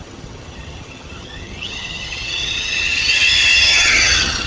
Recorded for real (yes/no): no